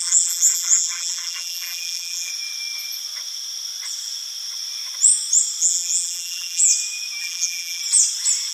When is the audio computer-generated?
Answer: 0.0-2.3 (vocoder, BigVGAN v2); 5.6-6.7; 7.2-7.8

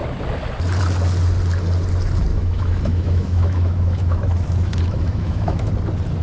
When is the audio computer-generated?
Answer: 2.3-5.7 (autoencoder, DAC-VAE)

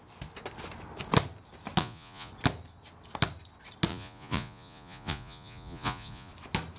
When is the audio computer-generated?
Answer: 1.8-2.3 (vocoder, Vocos); 3.9-6.3

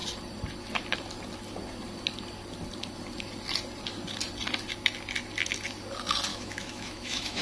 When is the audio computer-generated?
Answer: 6.3-7.4 (autoencoder, DAC-VAE)

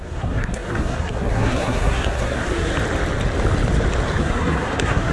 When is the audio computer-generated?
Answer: 0.0-2.7 (codec, SNAC); 4.2-5.1

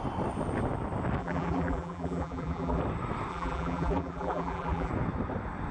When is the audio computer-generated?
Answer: 1.2-2.8 (vocoder, BigVGAN v2); 3.3-4.9

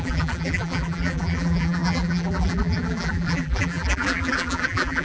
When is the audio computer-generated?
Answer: 0.0-5.0 (vocoder, BigVGAN v2)